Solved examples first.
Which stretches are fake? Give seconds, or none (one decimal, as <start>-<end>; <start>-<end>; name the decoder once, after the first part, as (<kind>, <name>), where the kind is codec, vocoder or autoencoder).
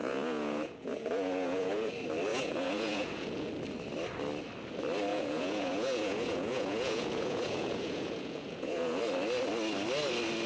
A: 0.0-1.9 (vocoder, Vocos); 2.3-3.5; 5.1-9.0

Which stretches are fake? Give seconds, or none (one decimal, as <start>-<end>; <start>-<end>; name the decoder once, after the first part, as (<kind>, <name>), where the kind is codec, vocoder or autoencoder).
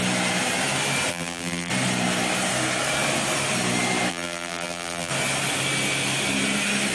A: 1.1-1.7 (vocoder, BigVGAN v2); 4.1-5.1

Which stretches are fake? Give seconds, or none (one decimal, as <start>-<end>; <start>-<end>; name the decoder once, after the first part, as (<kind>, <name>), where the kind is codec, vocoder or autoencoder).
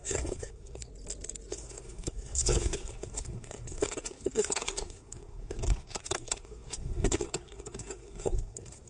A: 0.0-0.9 (codec, SNAC); 1.5-8.9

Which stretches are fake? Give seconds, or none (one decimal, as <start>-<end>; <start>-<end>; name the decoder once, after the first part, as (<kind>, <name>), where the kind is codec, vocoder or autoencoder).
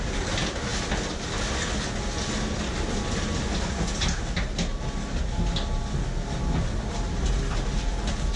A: none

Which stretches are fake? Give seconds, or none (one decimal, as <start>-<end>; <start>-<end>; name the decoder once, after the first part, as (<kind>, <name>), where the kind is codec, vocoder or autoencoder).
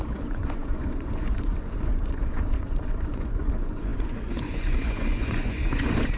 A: 0.0-6.2 (vocoder, Vocos)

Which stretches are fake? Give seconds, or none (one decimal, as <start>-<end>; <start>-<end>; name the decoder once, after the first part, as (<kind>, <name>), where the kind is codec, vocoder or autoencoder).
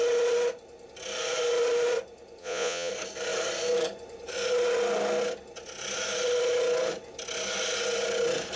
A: 2.4-2.9 (vocoder, Vocos)